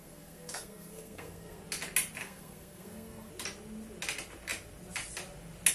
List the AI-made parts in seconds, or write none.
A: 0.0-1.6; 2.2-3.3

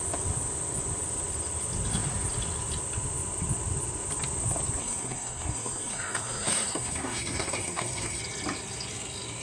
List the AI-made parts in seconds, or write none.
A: 4.8-8.2